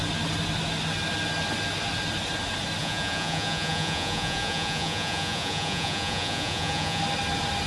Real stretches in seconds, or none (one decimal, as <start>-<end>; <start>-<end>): 0.0-2.8; 7.0-7.7